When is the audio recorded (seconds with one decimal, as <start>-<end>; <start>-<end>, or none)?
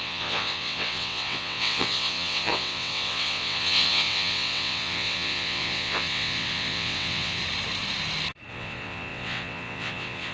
7.4-8.5